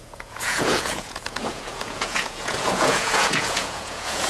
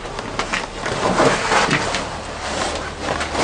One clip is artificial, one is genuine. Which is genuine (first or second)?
second